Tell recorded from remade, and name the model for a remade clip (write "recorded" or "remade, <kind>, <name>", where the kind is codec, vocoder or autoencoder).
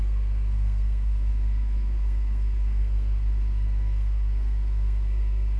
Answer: remade, codec, SNAC